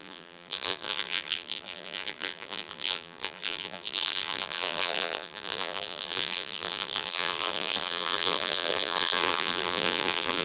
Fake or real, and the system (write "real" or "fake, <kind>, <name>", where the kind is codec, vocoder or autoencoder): fake, vocoder, BigVGAN v2